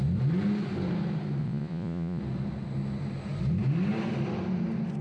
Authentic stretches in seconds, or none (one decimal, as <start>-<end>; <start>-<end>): 0.0-1.4; 2.2-5.0